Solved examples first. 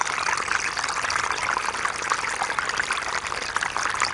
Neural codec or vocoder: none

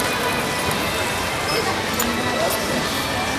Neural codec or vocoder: none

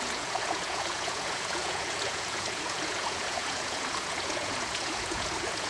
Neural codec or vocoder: vocoder, Vocos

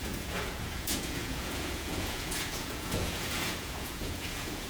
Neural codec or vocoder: vocoder, Vocos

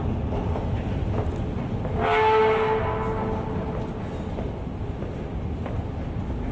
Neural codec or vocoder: none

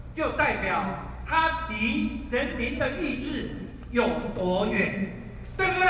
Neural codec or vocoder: none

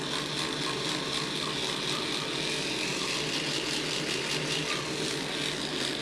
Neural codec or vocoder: none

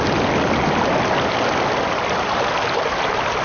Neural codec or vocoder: none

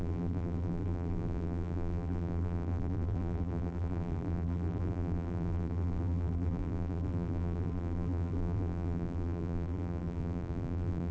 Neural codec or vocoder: vocoder, BigVGAN v2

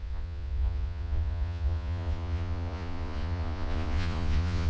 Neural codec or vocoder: vocoder, Vocos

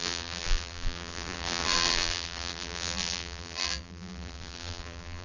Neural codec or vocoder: vocoder, BigVGAN v2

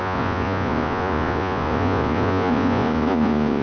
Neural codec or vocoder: vocoder, Vocos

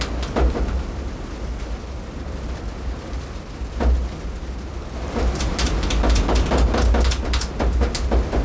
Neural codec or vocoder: none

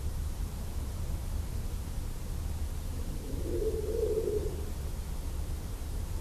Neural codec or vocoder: vocoder, BigVGAN v2